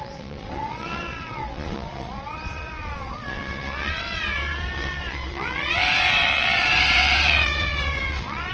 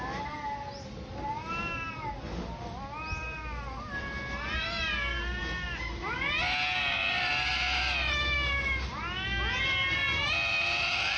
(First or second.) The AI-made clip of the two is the first